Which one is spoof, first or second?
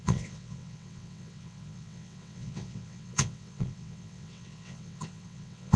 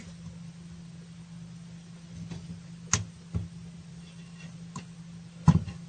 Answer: first